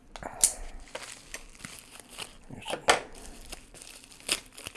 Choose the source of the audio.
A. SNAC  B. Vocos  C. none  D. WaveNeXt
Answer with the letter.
C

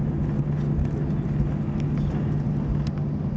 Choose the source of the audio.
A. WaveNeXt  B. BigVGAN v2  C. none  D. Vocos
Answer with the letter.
C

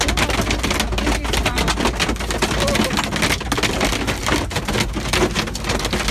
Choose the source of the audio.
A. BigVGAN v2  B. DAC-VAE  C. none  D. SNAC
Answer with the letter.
C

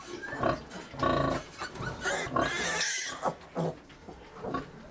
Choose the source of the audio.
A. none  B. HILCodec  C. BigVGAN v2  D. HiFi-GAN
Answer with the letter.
A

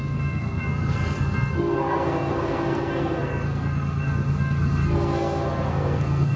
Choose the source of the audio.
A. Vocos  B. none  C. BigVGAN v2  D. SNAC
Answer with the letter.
D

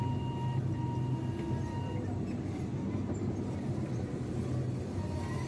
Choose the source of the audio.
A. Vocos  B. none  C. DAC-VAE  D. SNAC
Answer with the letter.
B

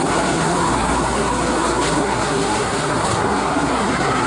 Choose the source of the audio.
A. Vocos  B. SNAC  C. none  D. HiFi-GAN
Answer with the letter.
B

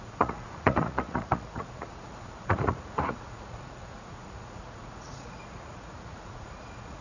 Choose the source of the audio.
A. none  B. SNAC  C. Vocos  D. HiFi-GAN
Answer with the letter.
C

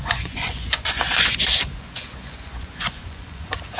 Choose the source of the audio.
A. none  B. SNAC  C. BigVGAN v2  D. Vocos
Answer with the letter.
D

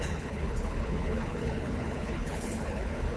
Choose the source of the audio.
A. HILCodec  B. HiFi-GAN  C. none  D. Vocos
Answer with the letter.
A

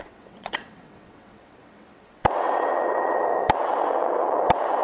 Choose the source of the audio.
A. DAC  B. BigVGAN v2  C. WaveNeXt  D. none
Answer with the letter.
C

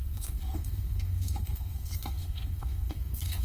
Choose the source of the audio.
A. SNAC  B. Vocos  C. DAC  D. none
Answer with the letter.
A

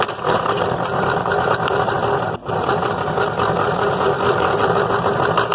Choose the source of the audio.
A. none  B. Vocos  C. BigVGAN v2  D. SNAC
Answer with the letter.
C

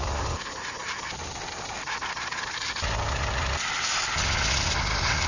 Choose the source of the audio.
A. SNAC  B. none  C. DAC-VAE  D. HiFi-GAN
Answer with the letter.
B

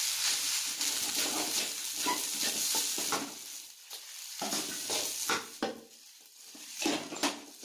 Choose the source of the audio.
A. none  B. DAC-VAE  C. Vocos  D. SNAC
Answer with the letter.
A